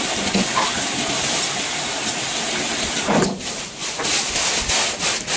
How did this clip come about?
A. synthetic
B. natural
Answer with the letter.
B